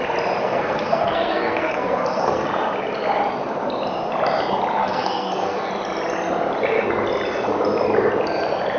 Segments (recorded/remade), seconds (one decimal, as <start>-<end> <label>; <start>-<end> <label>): 0.0-0.4 recorded; 0.4-2.5 remade; 2.5-4.8 recorded; 4.8-5.7 remade; 5.7-8.8 recorded